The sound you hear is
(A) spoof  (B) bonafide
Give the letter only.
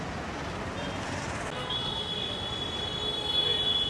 B